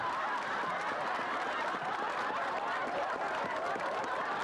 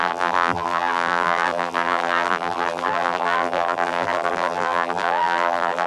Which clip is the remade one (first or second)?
second